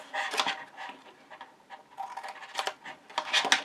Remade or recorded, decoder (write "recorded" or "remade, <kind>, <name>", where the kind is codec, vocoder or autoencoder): recorded